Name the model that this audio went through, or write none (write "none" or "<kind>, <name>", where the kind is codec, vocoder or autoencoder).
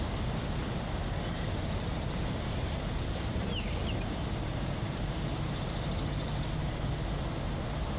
vocoder, BigVGAN v2